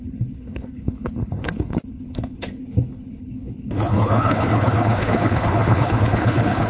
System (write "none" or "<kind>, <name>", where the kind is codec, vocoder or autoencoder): codec, HILCodec